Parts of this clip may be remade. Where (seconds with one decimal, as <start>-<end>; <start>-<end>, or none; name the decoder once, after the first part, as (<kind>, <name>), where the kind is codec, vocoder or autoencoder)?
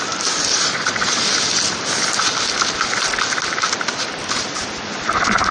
0.5-1.2 (vocoder, Vocos)